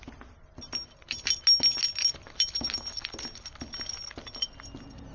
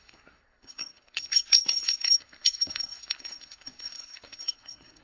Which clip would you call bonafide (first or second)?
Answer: first